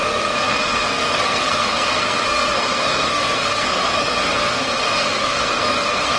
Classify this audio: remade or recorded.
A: remade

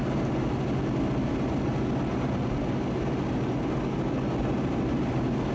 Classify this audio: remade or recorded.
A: recorded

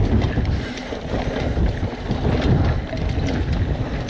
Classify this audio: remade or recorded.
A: recorded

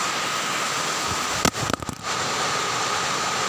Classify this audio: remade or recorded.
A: recorded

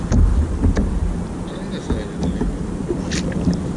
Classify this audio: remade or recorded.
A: recorded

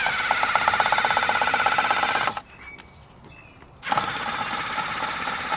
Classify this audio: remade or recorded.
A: recorded